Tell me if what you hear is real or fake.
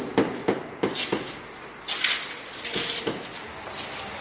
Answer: real